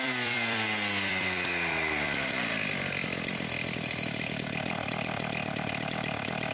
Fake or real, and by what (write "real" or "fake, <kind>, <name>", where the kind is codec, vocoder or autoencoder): fake, vocoder, BigVGAN v2